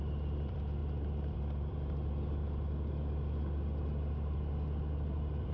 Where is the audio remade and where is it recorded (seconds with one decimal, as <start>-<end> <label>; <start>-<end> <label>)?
0.0-0.8 remade; 0.8-1.4 recorded; 1.4-5.5 remade